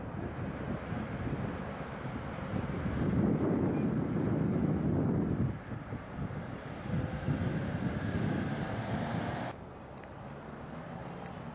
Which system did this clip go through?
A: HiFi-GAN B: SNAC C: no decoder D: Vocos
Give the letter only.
C